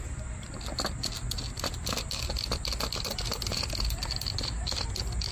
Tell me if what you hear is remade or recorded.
recorded